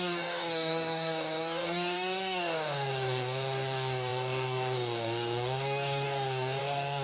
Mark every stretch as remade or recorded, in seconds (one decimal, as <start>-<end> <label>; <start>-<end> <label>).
0.0-7.0 remade